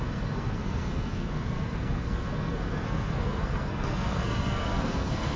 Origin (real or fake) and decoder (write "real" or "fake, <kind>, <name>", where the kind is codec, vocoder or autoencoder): fake, codec, SNAC